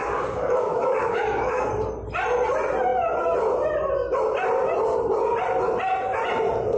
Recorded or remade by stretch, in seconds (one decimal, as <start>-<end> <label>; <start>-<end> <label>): 0.0-1.7 remade; 1.7-6.8 recorded